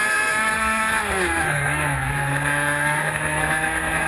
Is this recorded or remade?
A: remade